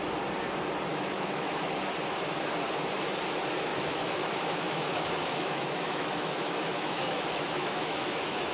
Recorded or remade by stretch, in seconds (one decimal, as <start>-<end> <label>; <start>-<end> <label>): 0.0-0.9 recorded; 0.9-1.7 remade; 1.7-3.7 recorded; 3.7-8.5 remade